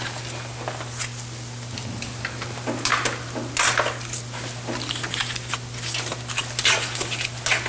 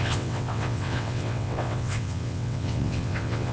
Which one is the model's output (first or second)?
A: second